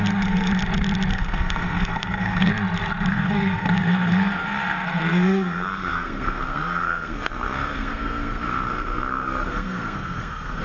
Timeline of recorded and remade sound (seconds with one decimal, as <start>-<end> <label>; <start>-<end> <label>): 0.0-0.5 remade; 0.5-1.1 recorded; 1.1-2.5 remade; 2.5-3.1 recorded; 3.1-10.6 remade